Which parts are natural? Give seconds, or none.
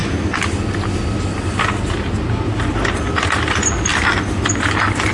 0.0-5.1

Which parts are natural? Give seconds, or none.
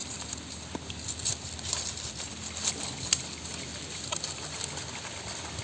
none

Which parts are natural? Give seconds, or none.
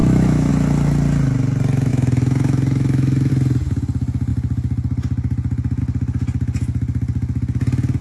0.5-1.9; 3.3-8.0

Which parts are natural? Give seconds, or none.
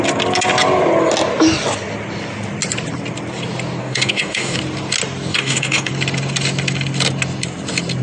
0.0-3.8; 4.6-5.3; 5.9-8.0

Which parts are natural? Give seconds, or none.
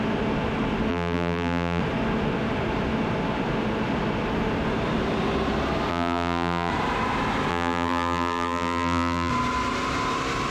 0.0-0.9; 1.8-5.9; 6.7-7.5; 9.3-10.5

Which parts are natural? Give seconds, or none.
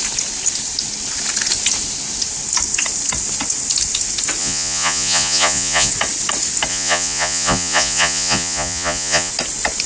0.0-4.4; 5.9-6.7; 9.3-9.9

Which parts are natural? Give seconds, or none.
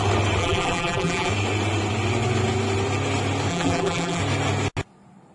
0.0-0.4; 1.3-3.5; 4.2-5.3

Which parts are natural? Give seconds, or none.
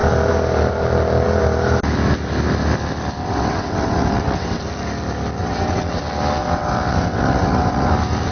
0.0-3.2; 4.6-5.4; 6.0-6.4; 7.9-8.3